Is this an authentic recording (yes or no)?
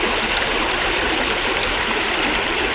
yes